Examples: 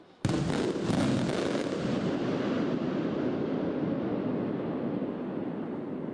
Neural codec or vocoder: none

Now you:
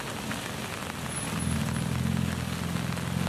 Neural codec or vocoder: none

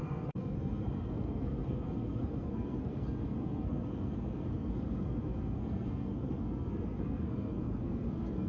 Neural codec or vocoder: codec, SNAC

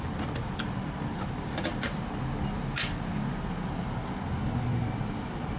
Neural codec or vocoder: none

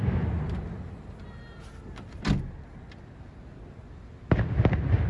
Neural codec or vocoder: none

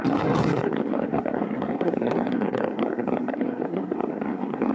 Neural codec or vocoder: codec, SNAC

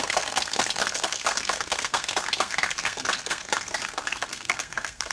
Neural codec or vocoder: codec, SNAC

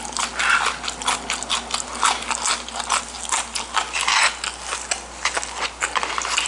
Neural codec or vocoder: none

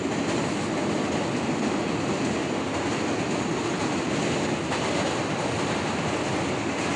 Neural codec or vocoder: none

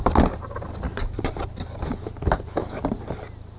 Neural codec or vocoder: none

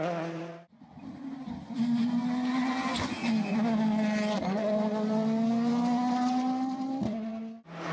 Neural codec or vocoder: none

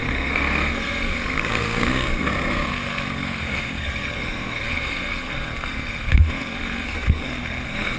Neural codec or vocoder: codec, SNAC